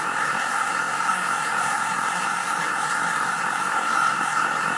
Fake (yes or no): yes